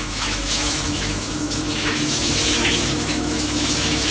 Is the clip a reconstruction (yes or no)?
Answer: yes